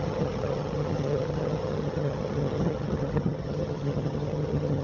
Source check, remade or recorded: remade